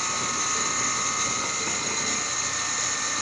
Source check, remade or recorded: recorded